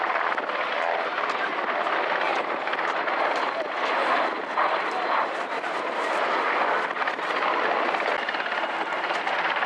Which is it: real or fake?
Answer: fake